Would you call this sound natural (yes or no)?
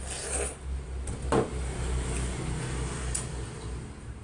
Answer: yes